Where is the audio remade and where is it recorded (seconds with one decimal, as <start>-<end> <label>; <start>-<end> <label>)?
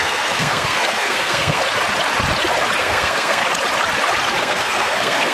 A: 0.0-1.6 remade; 1.6-2.8 recorded; 2.8-3.4 remade; 3.4-4.4 recorded; 4.4-5.3 remade